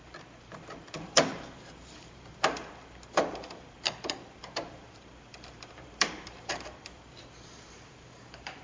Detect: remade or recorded remade